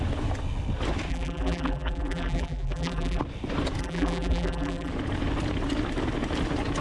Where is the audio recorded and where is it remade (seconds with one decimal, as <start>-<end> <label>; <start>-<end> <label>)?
0.0-1.1 recorded; 1.1-3.2 remade; 3.2-3.8 recorded; 3.8-4.9 remade; 4.9-6.8 recorded